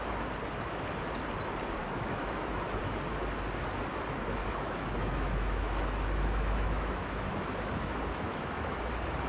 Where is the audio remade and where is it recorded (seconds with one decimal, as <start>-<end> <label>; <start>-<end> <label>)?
0.0-1.8 recorded; 1.8-2.8 remade; 2.8-4.4 recorded; 4.4-8.9 remade; 8.9-9.3 recorded